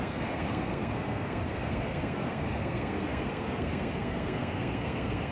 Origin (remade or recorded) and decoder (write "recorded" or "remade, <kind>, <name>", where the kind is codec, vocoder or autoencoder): remade, codec, SNAC